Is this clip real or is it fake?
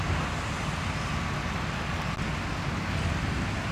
real